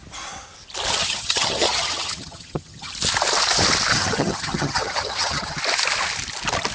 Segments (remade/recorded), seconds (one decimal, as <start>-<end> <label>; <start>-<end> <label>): 0.0-1.0 recorded; 1.0-2.9 remade; 2.9-3.9 recorded; 3.9-5.6 remade; 5.6-6.7 recorded